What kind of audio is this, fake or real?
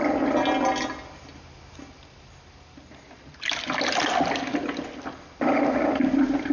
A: real